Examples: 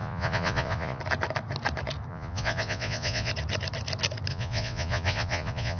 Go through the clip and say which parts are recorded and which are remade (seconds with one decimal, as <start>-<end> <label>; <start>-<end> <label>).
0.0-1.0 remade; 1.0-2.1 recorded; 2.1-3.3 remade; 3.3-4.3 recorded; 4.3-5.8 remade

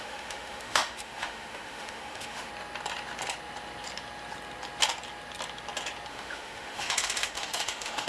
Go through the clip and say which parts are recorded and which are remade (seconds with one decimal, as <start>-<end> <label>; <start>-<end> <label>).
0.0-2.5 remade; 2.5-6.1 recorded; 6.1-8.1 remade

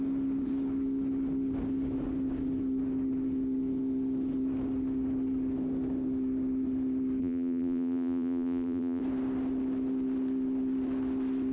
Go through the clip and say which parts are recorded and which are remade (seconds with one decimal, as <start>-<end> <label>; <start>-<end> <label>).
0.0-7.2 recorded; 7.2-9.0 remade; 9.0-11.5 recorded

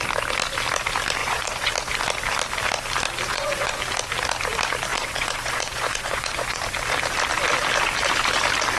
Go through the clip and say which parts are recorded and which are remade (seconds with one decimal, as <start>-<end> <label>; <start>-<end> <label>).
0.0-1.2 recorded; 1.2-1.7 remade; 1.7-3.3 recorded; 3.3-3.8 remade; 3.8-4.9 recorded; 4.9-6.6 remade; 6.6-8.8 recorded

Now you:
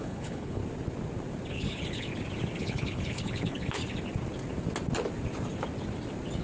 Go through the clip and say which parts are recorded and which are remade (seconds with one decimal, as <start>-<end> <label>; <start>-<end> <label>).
0.0-0.6 remade; 0.6-1.5 recorded; 1.5-2.1 remade; 2.1-2.6 recorded; 2.6-3.8 remade; 3.8-6.4 recorded

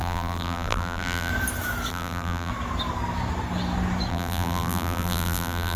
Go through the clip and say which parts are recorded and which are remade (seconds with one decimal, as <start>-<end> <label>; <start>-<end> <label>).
0.0-1.3 remade; 1.3-1.9 recorded; 1.9-2.5 remade; 2.5-4.1 recorded; 4.1-5.8 remade